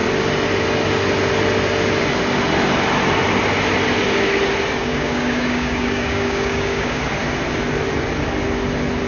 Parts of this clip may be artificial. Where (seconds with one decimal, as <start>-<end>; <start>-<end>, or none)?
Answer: 4.8-7.0